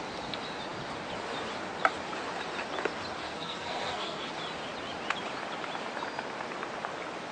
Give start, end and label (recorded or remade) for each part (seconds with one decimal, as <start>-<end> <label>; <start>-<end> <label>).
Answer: 0.0-3.2 recorded; 3.2-4.3 remade; 4.3-7.3 recorded